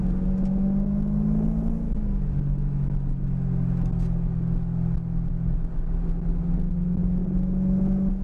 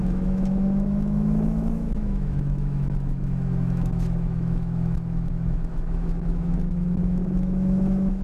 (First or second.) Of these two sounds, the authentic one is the first